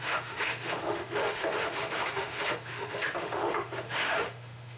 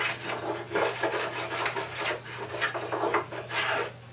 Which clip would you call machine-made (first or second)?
first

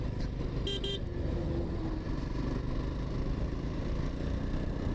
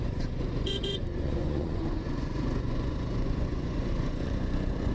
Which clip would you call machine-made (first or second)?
second